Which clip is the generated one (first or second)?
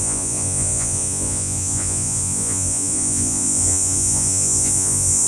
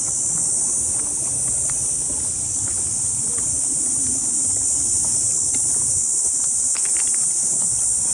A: first